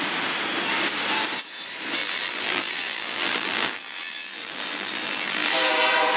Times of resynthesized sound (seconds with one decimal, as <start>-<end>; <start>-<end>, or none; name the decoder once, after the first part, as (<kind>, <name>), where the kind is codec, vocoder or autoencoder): 2.0-5.7 (vocoder, BigVGAN v2)